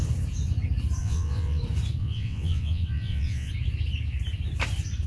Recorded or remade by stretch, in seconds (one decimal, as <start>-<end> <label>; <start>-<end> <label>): 0.0-1.0 recorded; 1.0-1.6 remade; 1.6-2.0 recorded; 2.0-3.5 remade; 3.5-5.1 recorded